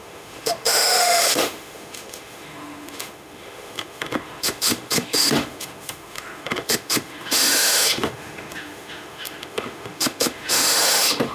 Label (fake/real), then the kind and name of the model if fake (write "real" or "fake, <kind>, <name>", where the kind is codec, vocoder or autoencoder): fake, autoencoder, DAC-VAE